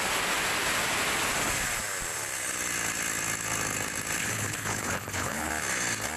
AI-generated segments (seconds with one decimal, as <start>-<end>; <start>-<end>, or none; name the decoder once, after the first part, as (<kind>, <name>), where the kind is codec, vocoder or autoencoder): 4.2-5.5 (codec, HILCodec)